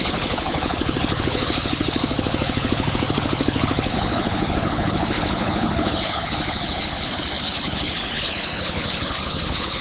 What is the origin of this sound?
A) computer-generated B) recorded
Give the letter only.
A